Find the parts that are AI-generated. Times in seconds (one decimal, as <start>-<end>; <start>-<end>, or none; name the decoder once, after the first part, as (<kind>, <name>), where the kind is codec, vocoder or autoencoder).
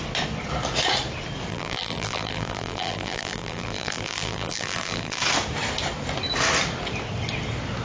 1.5-5.2 (vocoder, BigVGAN v2)